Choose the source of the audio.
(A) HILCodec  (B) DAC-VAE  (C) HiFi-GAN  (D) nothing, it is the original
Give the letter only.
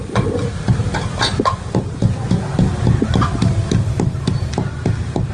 D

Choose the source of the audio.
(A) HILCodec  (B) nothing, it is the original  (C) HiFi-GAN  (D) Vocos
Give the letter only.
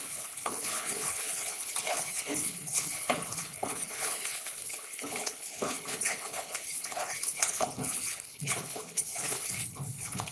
A